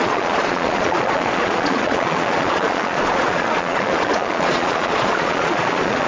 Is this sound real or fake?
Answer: fake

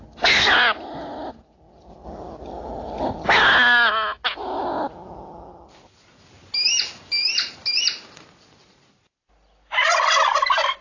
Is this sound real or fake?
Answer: real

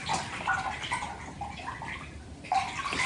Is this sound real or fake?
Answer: real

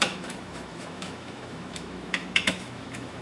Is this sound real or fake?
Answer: fake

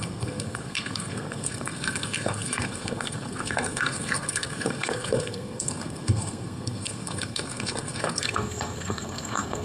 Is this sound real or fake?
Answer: fake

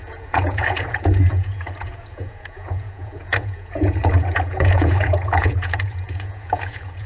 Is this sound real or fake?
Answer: fake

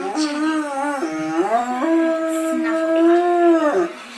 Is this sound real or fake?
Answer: real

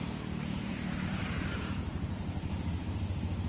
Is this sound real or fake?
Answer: fake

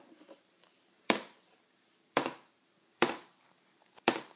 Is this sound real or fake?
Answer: fake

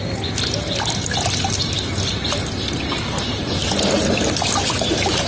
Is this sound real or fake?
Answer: real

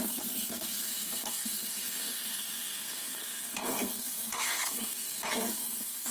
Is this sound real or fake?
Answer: fake